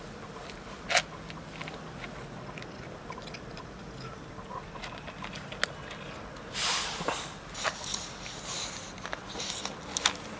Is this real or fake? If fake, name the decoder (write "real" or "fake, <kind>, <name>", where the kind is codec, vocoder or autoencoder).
real